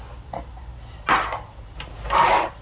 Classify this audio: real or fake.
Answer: real